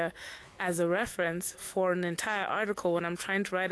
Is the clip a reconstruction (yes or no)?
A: yes